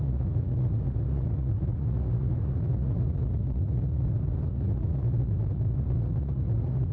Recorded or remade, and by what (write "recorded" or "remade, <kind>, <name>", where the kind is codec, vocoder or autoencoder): remade, vocoder, Vocos